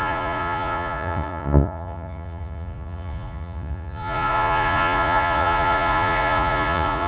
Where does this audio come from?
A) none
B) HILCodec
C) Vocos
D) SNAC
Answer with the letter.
C